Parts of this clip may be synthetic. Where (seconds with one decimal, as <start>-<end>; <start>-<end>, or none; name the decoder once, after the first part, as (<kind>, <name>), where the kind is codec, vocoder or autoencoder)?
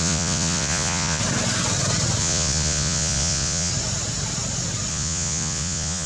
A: 0.0-1.2 (vocoder, Vocos); 2.2-3.7; 4.9-6.1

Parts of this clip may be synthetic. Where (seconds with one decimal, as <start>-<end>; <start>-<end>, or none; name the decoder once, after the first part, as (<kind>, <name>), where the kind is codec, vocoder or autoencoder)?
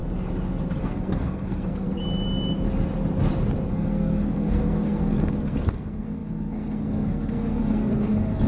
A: 0.8-2.0 (codec, SNAC); 3.7-8.5